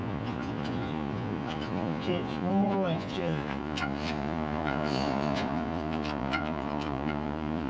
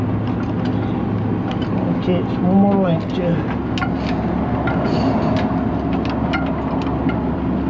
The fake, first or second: first